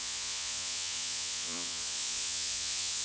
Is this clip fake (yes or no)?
yes